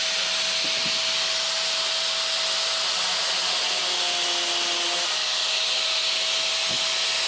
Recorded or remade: recorded